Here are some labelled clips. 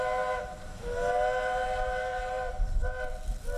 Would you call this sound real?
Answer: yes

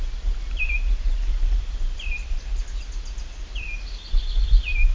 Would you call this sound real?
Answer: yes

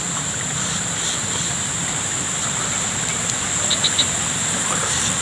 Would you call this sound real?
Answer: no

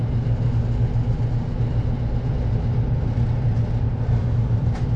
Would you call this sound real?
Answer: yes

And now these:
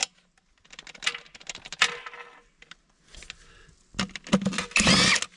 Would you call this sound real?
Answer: yes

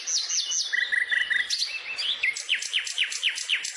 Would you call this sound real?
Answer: yes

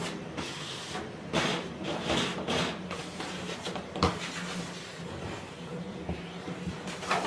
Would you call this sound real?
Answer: no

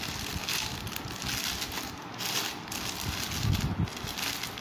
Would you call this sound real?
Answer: yes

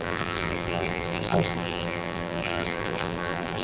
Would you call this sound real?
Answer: no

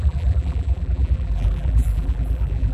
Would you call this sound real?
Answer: no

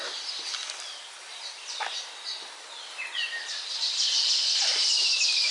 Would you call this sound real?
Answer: yes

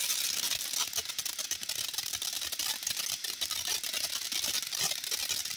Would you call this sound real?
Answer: yes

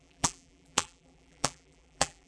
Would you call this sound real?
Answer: no